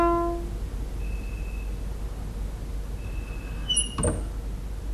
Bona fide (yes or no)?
yes